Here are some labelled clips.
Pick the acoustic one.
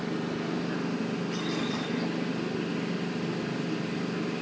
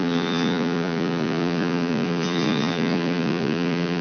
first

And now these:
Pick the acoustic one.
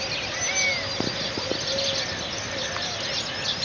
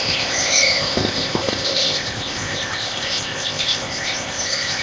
first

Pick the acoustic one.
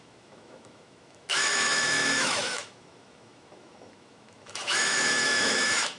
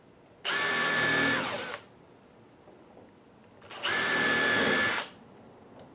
second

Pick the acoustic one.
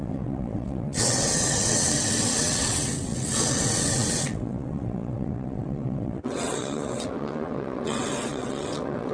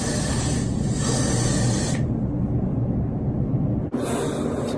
second